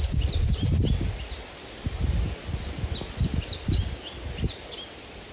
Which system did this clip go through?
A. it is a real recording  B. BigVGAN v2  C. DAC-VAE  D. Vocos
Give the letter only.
A